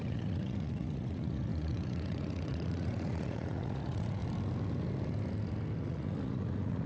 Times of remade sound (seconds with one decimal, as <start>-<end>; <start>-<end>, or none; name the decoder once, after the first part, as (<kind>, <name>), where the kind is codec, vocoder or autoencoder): 0.0-4.2 (vocoder, Vocos); 5.8-6.9